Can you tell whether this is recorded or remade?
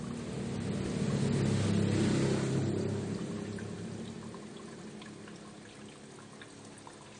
recorded